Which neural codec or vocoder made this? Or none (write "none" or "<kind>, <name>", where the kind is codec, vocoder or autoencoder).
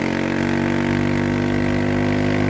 none